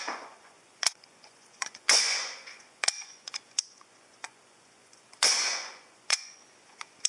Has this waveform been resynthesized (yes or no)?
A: yes